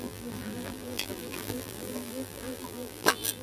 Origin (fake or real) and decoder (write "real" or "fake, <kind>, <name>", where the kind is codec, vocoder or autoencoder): fake, vocoder, BigVGAN v2